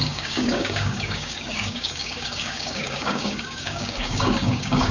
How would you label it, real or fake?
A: fake